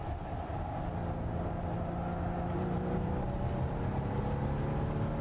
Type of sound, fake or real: real